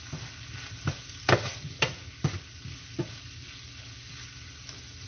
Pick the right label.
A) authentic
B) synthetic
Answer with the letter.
A